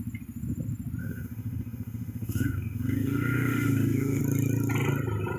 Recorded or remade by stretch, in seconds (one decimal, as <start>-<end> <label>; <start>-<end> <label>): 0.0-1.0 recorded; 1.0-4.2 remade; 4.2-5.4 recorded